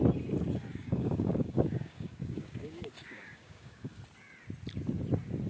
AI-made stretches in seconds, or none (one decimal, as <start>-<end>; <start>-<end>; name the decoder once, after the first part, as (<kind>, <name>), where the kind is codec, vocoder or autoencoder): 0.7-4.0 (codec, DAC)